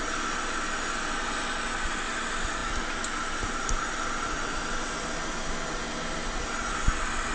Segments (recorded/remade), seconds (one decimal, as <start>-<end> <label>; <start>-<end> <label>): 0.0-7.3 recorded